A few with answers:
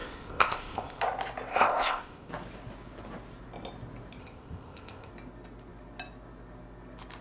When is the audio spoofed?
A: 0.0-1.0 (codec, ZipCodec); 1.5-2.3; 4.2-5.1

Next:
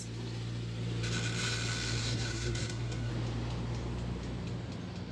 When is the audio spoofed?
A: 2.0-3.1 (codec, SNAC)

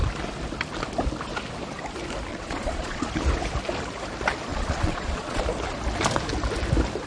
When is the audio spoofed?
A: 2.3-3.1 (vocoder, Vocos); 4.5-5.4

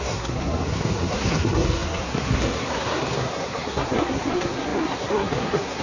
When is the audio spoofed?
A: 0.0-5.8 (codec, SNAC)